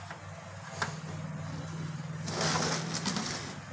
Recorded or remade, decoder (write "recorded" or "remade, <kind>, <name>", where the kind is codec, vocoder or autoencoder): recorded